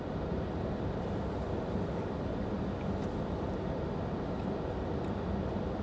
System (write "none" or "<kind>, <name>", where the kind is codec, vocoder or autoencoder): none